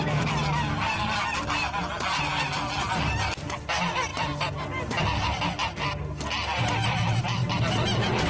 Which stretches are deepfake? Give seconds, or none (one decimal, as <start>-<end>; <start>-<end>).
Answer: none

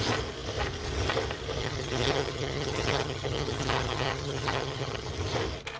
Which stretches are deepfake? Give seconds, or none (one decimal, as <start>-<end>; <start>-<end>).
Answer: 1.6-5.1